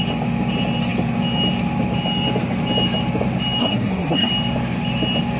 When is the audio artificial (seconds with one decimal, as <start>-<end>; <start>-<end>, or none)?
3.6-4.3